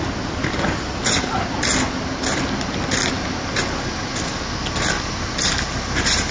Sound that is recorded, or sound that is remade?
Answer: recorded